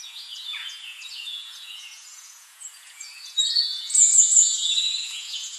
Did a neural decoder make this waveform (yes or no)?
yes